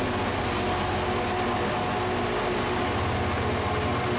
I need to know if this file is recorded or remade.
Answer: recorded